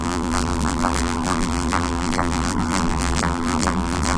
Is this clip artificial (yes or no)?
yes